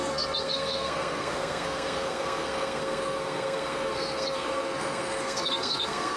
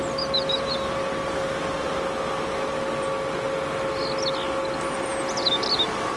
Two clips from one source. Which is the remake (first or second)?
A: first